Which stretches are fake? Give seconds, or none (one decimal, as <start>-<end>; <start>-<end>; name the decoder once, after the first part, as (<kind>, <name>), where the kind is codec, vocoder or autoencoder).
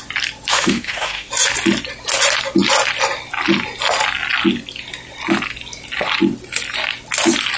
0.5-1.3 (autoencoder, DAC-VAE)